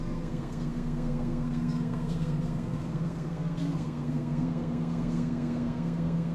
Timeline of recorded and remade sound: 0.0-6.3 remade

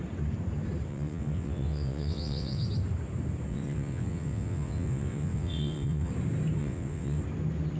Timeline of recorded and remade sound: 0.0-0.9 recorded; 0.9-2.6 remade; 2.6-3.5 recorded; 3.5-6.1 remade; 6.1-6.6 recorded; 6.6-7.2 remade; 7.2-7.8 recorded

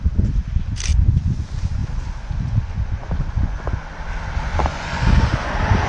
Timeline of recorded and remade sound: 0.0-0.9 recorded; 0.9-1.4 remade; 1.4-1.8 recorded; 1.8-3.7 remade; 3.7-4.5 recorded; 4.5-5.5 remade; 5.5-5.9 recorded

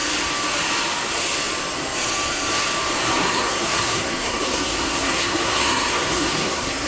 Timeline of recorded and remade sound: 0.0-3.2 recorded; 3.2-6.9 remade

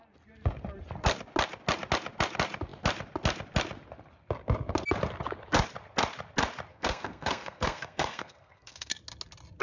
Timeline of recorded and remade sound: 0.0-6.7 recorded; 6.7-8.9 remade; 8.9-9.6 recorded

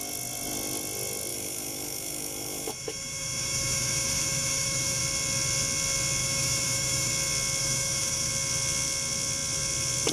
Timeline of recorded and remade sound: 0.0-1.3 recorded; 1.3-5.0 remade; 5.0-6.2 recorded; 6.2-7.1 remade; 7.1-7.6 recorded; 7.6-8.3 remade; 8.3-10.1 recorded